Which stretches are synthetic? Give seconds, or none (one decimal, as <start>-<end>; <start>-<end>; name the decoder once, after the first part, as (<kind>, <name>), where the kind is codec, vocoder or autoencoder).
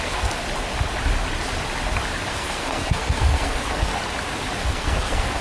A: 0.0-0.4 (codec, SNAC); 2.3-3.9; 4.6-5.4